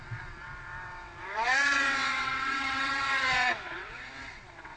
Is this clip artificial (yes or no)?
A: yes